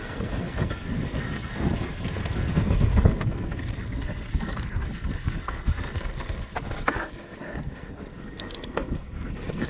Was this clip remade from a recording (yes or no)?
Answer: yes